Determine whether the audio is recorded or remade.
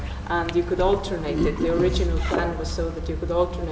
recorded